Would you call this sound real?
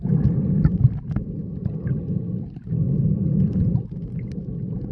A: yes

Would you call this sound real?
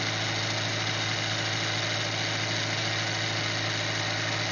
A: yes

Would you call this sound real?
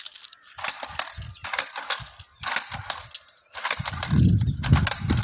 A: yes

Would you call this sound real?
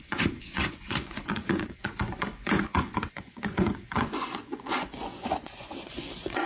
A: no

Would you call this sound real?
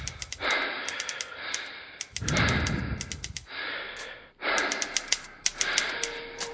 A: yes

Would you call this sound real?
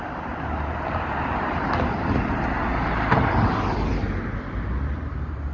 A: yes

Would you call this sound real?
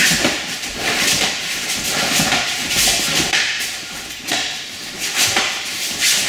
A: yes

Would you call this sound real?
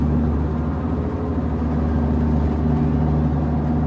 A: yes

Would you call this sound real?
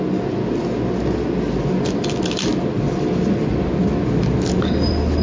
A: yes